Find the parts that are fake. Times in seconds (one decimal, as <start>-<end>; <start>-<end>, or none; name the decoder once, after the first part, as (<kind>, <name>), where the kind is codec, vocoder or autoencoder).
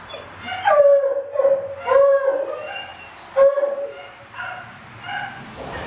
none